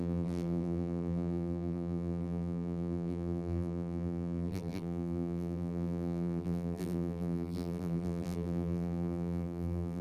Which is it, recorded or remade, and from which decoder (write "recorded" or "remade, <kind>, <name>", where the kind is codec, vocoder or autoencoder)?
remade, vocoder, BigVGAN v2